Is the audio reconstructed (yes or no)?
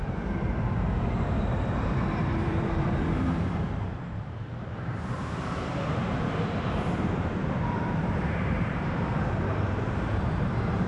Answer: yes